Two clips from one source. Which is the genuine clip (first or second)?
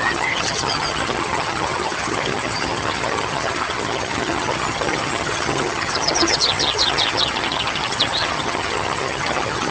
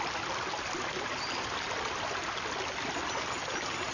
second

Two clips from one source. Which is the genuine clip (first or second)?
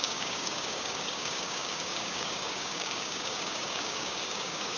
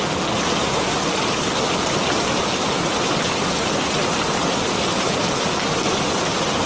second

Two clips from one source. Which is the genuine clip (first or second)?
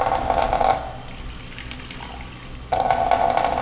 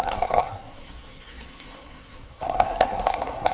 first